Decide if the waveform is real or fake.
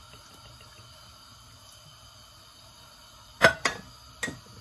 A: real